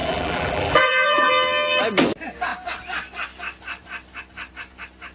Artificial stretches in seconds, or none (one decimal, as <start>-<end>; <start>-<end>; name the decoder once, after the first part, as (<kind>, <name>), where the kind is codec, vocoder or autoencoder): 0.0-1.3 (vocoder, BigVGAN v2)